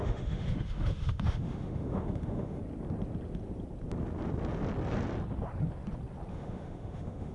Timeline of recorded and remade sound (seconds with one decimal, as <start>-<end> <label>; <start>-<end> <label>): 0.0-2.6 remade; 2.6-6.3 recorded; 6.3-7.3 remade